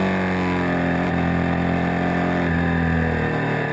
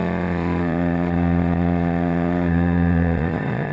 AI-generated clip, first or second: second